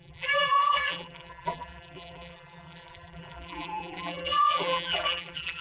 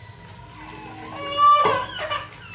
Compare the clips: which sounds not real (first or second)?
first